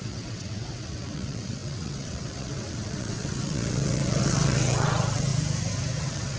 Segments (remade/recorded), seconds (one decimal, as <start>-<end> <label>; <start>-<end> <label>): 0.0-5.3 remade; 5.3-6.0 recorded; 6.0-6.4 remade